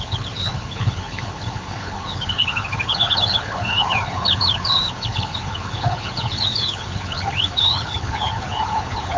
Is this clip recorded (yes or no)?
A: no